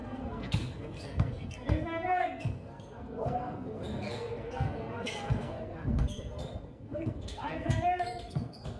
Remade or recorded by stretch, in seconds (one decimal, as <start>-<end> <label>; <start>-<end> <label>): 0.0-8.8 remade